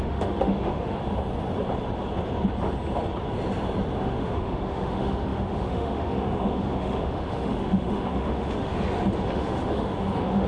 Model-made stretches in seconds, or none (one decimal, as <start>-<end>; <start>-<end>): 0.0-1.0; 4.0-8.7; 9.3-10.5